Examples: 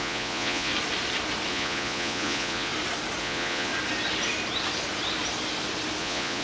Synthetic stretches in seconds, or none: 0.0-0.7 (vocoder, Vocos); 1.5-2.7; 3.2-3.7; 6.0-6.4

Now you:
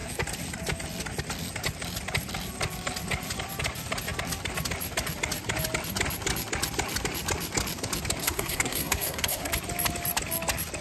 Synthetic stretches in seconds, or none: 8.2-9.5 (codec, SNAC)

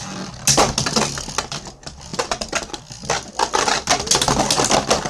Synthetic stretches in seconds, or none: none

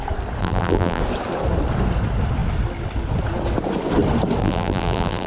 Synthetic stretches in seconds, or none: 0.4-1.0 (vocoder, BigVGAN v2); 4.4-5.3

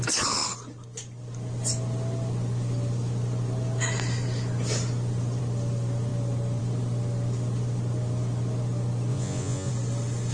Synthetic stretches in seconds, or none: 9.1-9.7 (vocoder, Vocos)